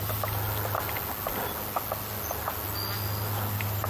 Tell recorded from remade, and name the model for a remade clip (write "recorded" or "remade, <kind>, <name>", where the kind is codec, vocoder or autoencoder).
recorded